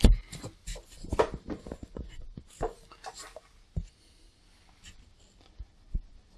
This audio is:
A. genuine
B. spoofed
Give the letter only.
A